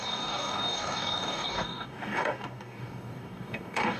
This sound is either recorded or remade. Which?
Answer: remade